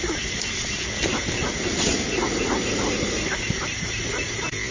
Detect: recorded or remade recorded